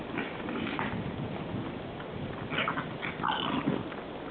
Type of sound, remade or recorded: recorded